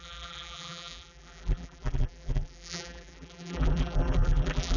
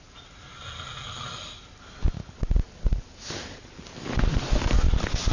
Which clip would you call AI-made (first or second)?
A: first